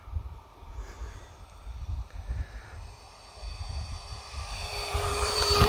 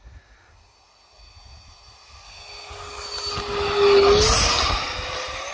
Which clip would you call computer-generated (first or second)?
first